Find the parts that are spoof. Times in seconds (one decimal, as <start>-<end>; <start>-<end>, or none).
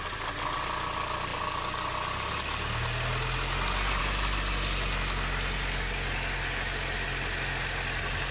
none